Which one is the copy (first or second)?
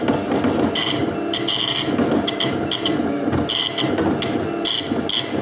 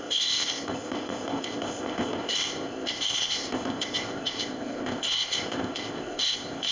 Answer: second